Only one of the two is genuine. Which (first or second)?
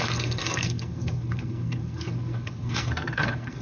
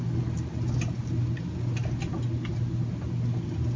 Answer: second